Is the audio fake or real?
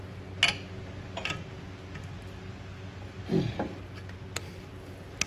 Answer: real